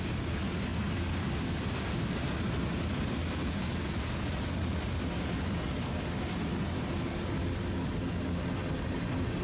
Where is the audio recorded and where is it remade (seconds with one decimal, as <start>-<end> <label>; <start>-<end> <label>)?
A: 0.0-9.4 recorded

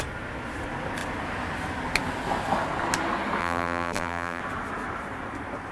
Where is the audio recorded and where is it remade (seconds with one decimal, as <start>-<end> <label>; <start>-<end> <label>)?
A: 0.0-3.4 recorded; 3.4-4.4 remade; 4.4-5.7 recorded

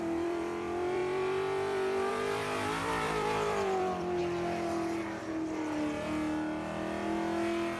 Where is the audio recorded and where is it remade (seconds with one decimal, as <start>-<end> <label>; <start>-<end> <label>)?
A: 0.0-4.2 remade; 4.2-7.8 recorded

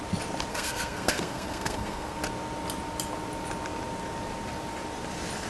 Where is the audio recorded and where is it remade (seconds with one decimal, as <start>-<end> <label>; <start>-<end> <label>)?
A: 0.0-0.5 recorded; 0.5-2.2 remade; 2.2-5.5 recorded

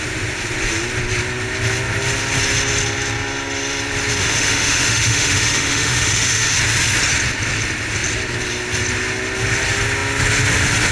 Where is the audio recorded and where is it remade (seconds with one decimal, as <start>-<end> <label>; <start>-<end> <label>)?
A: 0.0-4.2 recorded; 4.2-6.6 remade; 6.6-10.9 recorded

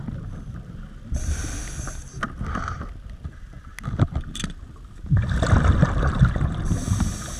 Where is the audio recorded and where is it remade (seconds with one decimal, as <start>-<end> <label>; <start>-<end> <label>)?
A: 0.0-7.4 recorded

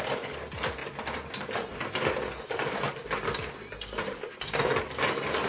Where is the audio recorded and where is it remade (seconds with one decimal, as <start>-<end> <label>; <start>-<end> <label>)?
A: 0.0-5.5 recorded